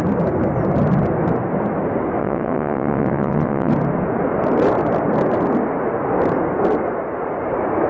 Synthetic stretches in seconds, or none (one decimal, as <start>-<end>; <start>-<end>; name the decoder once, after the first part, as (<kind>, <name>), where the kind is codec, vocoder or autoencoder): 2.2-3.7 (vocoder, WaveNeXt)